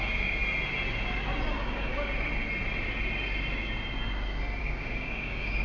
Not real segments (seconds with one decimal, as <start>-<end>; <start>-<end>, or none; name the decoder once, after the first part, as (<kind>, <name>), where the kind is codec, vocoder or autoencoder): 0.0-0.4 (codec, DAC); 1.5-1.9; 4.6-5.6